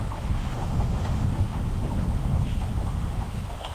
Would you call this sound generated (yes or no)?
yes